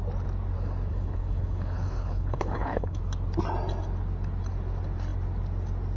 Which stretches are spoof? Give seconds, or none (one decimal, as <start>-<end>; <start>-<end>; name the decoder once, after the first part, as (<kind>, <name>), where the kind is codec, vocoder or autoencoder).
0.9-3.0 (codec, HILCodec)